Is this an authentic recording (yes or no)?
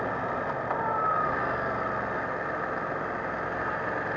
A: yes